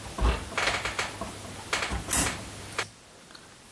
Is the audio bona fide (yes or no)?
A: yes